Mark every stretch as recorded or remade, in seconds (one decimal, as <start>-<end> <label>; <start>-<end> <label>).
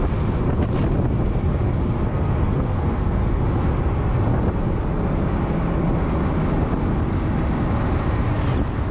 0.0-2.1 recorded; 2.1-3.4 remade; 3.4-8.9 recorded